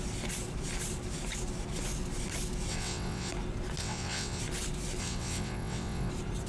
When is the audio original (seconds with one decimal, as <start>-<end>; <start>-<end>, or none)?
0.0-2.7; 3.3-3.8; 4.4-5.0; 6.1-6.5